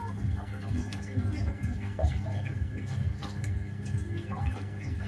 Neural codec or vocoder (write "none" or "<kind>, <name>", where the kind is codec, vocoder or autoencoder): codec, SNAC